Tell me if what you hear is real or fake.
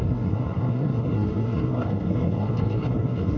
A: fake